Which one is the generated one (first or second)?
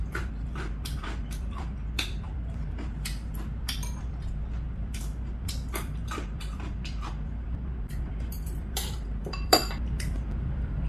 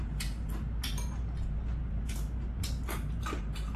first